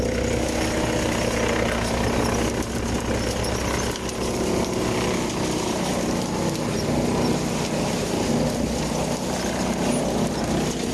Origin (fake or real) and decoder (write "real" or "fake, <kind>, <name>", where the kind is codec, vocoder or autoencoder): real